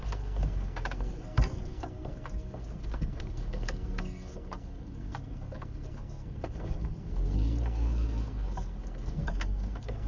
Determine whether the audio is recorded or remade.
remade